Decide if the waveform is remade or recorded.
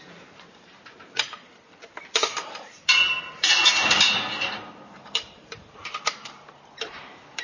remade